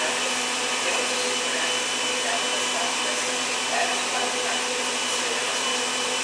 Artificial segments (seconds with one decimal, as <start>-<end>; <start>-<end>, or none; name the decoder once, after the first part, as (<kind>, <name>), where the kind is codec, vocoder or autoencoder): none